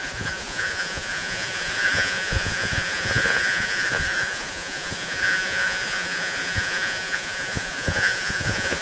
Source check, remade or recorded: remade